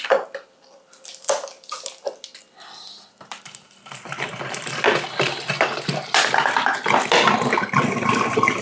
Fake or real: real